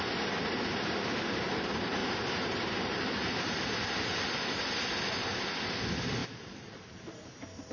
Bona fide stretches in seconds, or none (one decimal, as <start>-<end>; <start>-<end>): 0.0-2.0; 3.4-6.2